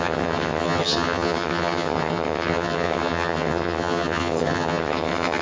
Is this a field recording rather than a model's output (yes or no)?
no